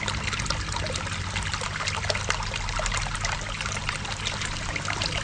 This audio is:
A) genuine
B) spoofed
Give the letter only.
A